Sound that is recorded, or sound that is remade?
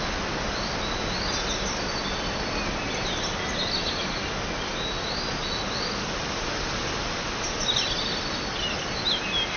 recorded